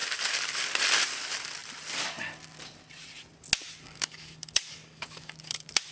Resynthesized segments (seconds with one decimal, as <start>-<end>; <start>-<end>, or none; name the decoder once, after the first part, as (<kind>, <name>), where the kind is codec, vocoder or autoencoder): 3.6-5.9 (codec, DAC)